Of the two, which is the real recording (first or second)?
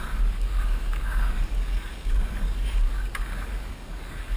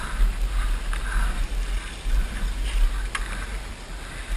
second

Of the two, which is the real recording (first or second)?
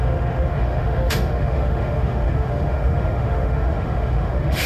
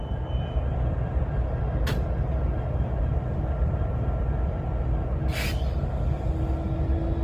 second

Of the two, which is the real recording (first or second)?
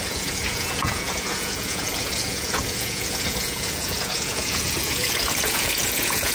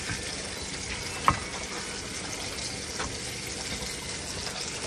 second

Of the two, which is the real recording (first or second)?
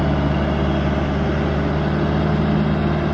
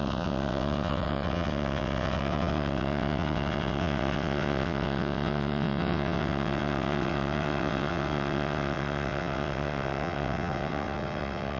first